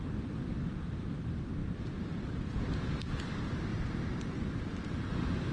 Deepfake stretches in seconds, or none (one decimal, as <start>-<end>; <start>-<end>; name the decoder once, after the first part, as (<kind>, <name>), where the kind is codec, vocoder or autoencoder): 0.5-1.1 (vocoder, BigVGAN v2); 1.6-2.2